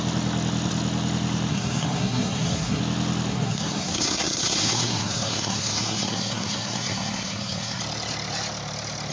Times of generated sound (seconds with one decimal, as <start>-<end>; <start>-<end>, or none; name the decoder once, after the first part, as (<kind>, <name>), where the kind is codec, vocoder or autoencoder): 1.5-2.8 (codec, SNAC); 3.3-7.8